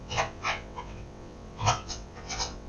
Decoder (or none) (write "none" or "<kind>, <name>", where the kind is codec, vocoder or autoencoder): vocoder, WaveNeXt